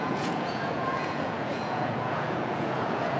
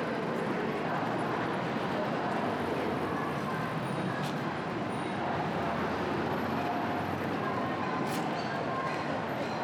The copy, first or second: first